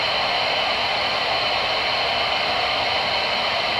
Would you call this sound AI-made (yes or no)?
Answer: no